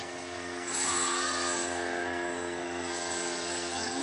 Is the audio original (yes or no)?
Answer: no